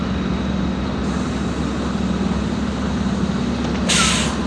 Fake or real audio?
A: real